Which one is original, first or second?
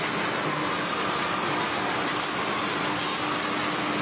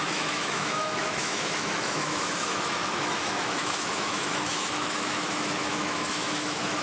first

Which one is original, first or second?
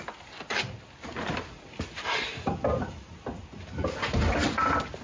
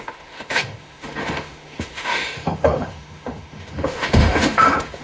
first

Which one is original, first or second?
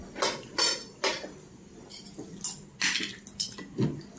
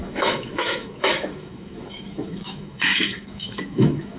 first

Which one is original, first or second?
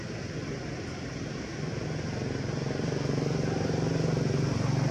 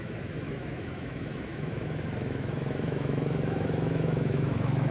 first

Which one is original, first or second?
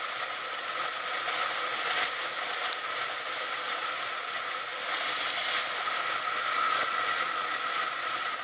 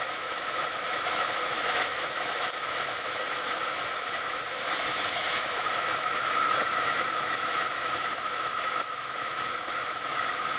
first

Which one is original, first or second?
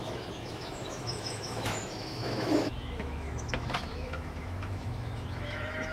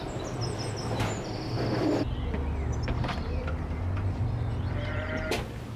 second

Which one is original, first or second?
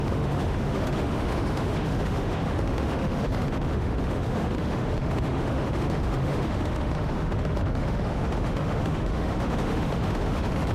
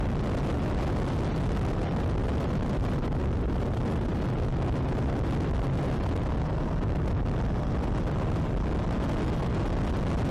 second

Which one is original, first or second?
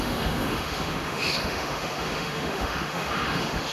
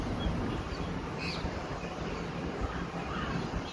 second